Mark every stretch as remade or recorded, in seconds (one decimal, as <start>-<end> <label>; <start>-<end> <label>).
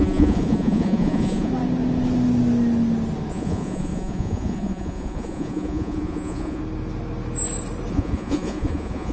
0.0-1.5 remade; 1.5-3.3 recorded; 3.3-6.6 remade; 6.6-7.9 recorded; 7.9-9.1 remade